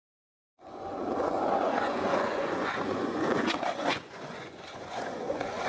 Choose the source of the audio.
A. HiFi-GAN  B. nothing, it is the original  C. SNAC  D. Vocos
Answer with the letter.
D